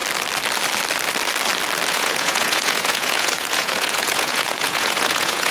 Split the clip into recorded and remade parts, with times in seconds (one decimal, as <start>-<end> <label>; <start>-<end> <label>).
0.0-1.9 recorded; 1.9-5.5 remade